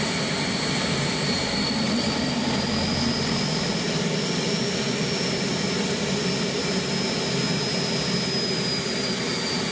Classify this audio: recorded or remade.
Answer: recorded